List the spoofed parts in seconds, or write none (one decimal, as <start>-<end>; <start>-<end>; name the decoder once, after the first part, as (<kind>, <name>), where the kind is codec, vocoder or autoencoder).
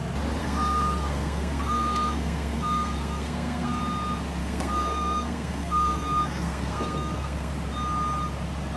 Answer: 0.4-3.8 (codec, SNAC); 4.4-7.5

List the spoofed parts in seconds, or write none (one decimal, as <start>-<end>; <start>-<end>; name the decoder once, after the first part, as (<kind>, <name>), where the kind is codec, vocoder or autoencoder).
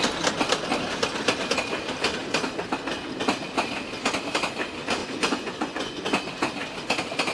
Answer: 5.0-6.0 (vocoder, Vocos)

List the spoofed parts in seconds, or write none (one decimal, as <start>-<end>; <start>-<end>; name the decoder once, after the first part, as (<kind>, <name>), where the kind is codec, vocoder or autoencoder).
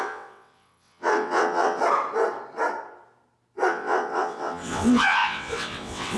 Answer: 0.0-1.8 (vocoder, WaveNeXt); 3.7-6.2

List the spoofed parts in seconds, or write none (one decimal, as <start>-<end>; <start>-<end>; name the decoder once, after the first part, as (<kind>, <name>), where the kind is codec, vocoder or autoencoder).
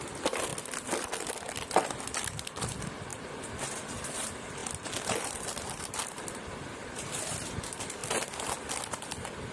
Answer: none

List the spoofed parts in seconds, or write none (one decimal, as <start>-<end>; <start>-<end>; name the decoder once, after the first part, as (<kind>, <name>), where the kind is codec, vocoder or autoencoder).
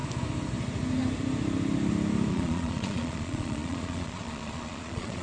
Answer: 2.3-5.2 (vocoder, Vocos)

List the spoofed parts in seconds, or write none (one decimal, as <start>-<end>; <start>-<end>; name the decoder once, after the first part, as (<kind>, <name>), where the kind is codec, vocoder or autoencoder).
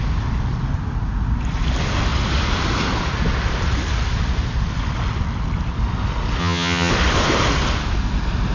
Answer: 6.4-6.9 (vocoder, HiFi-GAN)